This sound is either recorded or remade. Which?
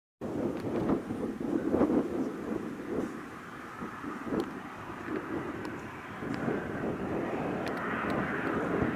recorded